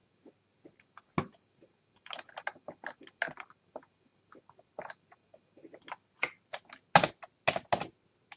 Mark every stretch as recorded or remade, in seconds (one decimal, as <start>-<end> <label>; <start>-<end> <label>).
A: 0.0-8.4 recorded